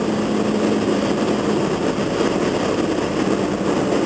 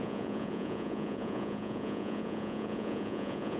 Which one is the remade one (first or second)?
second